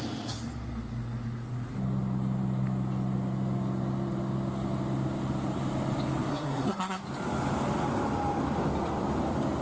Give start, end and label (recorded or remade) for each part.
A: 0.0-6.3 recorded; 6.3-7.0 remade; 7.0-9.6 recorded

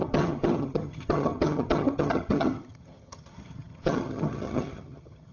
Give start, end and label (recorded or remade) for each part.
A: 0.0-5.3 remade

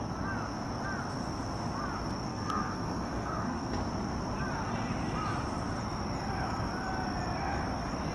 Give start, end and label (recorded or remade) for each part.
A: 0.0-2.3 recorded; 2.3-3.8 remade; 3.8-8.1 recorded

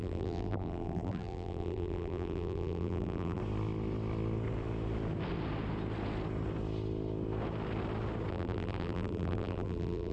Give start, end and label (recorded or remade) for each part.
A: 0.0-3.4 remade; 3.4-8.3 recorded; 8.3-10.1 remade

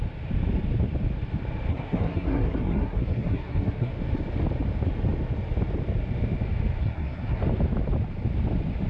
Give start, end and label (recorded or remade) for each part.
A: 0.0-1.7 recorded; 1.7-3.9 remade; 3.9-6.8 recorded; 6.8-7.4 remade; 7.4-8.9 recorded

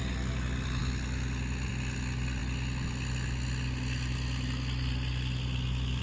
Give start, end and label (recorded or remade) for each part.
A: 0.0-6.0 recorded

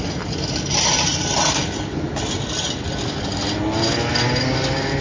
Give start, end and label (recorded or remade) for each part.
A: 0.0-1.1 recorded; 1.1-2.1 remade; 2.1-5.0 recorded

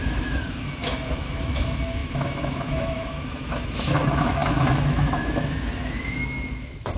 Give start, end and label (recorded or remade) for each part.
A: 0.0-7.0 remade